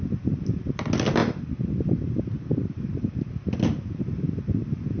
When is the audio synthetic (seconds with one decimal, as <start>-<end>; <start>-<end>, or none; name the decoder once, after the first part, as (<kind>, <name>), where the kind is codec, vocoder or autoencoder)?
none